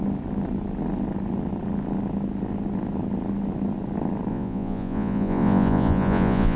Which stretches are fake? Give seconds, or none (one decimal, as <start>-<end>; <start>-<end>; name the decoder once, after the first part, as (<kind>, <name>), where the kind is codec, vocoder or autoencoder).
4.3-6.6 (vocoder, Vocos)